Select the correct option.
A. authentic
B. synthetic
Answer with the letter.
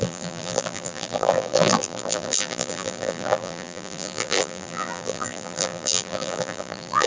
B